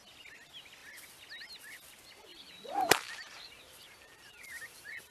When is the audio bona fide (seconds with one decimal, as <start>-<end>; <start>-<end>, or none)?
0.0-2.3